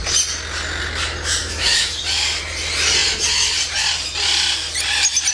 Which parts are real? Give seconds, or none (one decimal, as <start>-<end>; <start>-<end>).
0.0-1.4; 2.0-5.3